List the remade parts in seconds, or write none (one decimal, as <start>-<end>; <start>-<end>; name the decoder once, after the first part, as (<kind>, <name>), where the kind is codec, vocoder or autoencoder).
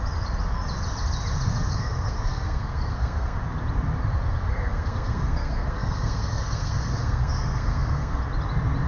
1.7-3.4 (codec, SNAC); 4.5-8.2